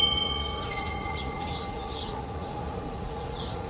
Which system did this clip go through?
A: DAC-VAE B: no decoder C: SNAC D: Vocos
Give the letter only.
D